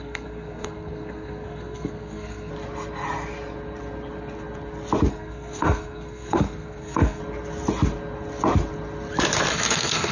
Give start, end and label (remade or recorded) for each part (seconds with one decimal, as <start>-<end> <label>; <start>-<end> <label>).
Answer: 0.0-2.5 remade; 2.5-5.1 recorded; 5.1-7.2 remade; 7.2-9.5 recorded; 9.5-10.1 remade